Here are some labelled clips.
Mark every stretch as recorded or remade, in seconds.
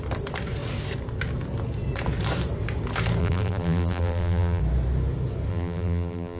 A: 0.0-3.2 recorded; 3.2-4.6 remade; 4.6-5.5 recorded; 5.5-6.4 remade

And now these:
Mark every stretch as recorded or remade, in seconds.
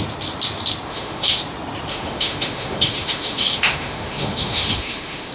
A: 0.0-0.9 recorded; 0.9-1.4 remade; 1.4-1.9 recorded; 1.9-5.3 remade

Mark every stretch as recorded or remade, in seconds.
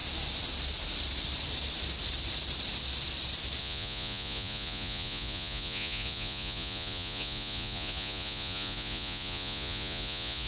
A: 0.0-3.6 recorded; 3.6-10.5 remade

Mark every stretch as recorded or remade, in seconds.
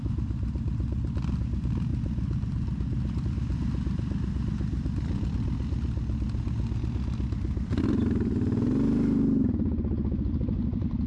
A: 0.0-11.1 recorded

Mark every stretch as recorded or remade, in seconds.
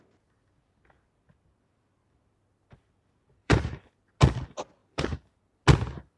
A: 0.0-3.4 recorded; 3.4-3.9 remade; 3.9-4.8 recorded; 4.8-5.4 remade; 5.4-6.2 recorded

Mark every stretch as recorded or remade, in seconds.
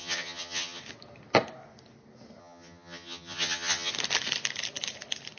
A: 0.0-0.8 remade; 0.8-2.4 recorded; 2.4-3.9 remade; 3.9-5.4 recorded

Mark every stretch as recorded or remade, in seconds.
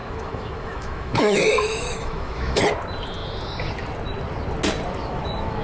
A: 0.0-2.6 remade; 2.6-5.0 recorded; 5.0-5.6 remade